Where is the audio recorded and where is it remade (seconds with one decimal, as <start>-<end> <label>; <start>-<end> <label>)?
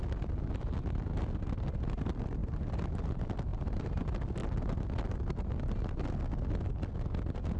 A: 0.0-2.4 recorded; 2.4-3.0 remade; 3.0-3.5 recorded; 3.5-4.0 remade; 4.0-7.6 recorded